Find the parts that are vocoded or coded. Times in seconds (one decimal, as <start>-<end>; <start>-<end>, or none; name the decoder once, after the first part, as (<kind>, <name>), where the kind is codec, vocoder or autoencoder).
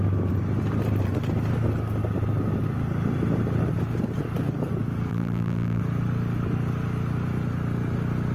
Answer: 5.1-5.8 (vocoder, BigVGAN v2)